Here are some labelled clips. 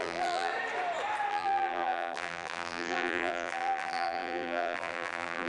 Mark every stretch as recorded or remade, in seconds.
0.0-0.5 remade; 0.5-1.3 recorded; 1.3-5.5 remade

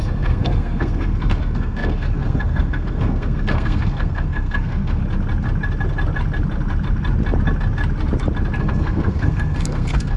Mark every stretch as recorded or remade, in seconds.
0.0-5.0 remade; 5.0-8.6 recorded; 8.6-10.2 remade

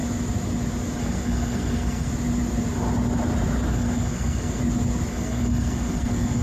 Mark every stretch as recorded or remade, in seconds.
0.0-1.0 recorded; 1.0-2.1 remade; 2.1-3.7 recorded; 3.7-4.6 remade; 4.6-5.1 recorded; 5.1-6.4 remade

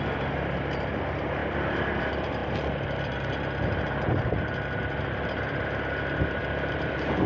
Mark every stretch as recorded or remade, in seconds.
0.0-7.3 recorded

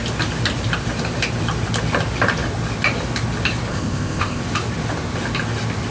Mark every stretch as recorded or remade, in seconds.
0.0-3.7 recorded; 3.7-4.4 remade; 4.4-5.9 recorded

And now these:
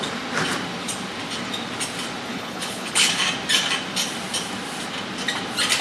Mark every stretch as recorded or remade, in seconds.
0.0-2.3 recorded; 2.3-3.1 remade; 3.1-5.8 recorded